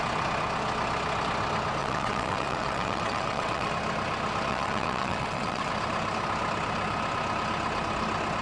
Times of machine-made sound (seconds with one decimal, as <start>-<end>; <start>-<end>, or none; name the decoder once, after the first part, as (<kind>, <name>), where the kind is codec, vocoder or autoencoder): 1.8-3.7 (vocoder, WaveNeXt); 4.5-5.7